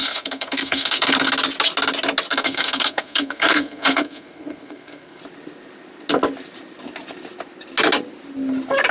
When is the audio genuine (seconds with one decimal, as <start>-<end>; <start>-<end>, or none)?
1.3-2.3; 5.2-8.9